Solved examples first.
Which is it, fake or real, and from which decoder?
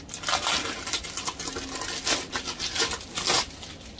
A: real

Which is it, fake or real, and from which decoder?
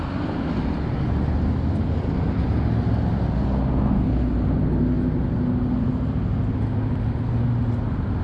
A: real